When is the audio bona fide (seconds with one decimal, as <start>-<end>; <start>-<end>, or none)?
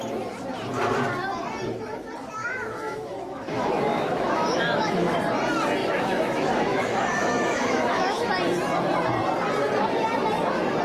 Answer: 0.0-2.4; 5.2-5.8; 8.3-10.8